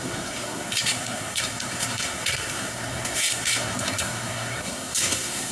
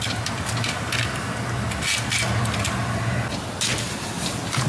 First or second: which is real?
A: second